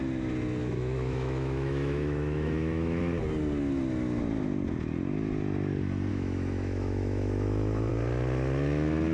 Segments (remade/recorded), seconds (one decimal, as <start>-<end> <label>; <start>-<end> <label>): 0.0-0.6 recorded; 0.6-3.0 remade; 3.0-6.1 recorded; 6.1-7.9 remade; 7.9-9.1 recorded